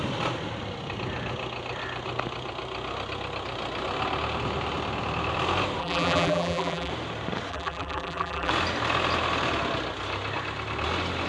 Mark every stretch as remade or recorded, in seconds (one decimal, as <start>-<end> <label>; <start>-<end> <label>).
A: 0.0-5.8 recorded; 5.8-6.9 remade; 6.9-7.5 recorded; 7.5-8.5 remade; 8.5-11.3 recorded